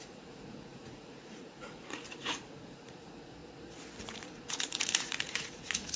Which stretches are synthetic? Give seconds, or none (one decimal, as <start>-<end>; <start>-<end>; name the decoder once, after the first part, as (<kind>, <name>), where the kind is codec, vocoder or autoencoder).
0.0-3.4 (vocoder, Vocos); 4.1-6.0

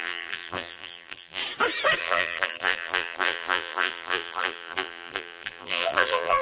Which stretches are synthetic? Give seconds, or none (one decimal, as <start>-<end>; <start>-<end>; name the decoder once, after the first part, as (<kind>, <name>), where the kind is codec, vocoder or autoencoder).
0.0-1.4 (vocoder, BigVGAN v2); 2.0-6.4

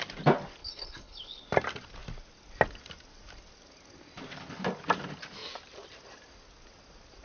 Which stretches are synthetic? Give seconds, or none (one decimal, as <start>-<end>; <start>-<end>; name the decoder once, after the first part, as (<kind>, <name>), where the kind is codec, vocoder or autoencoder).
0.6-1.5 (codec, HILCodec)

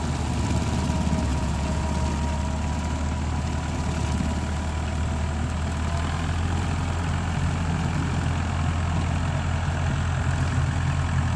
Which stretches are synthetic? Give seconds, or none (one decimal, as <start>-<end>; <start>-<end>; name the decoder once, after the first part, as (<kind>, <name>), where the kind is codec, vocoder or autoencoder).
1.3-1.8 (vocoder, Vocos)

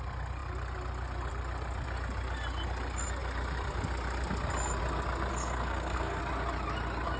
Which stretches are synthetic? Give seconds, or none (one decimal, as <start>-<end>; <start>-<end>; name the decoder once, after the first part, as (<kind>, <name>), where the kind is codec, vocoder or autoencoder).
5.3-6.2 (codec, SNAC)